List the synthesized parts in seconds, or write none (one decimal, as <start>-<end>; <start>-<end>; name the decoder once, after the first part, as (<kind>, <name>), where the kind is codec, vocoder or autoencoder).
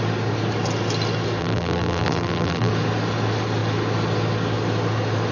1.4-2.7 (vocoder, BigVGAN v2)